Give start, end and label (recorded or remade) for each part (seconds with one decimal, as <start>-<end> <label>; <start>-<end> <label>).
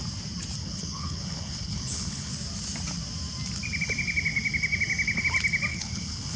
0.0-0.6 recorded; 0.6-2.3 remade; 2.3-5.7 recorded; 5.7-6.4 remade